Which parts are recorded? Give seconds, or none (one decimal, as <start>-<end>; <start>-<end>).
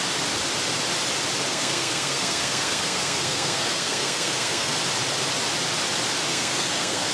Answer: 0.0-1.5; 4.8-6.3